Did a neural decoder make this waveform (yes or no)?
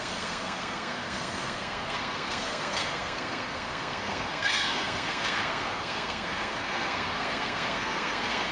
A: yes